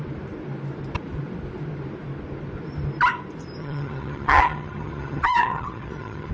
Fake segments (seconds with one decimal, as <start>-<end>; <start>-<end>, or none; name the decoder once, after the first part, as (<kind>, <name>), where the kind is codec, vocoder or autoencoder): 3.6-6.3 (vocoder, HiFi-GAN)